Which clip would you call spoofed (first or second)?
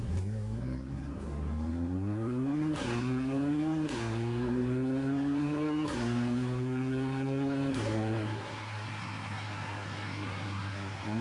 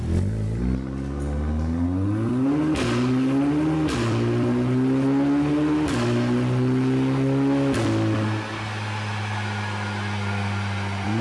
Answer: first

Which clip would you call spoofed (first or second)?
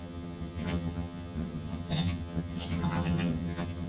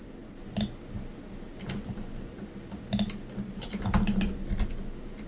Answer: first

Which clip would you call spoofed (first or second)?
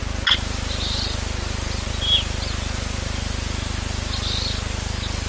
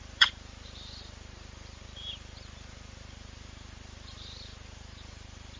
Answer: second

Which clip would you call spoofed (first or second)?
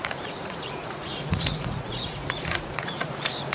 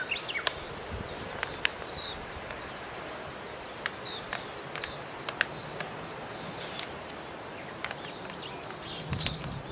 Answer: first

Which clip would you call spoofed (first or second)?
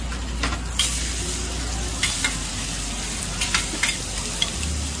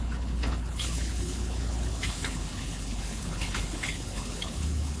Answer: second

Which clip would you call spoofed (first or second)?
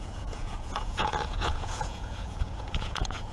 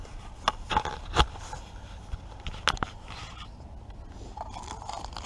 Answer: first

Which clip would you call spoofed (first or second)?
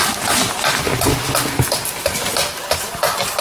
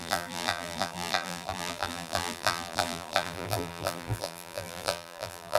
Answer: second